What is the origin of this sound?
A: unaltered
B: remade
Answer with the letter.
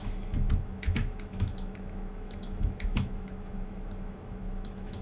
B